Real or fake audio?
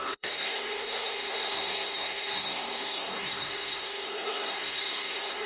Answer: fake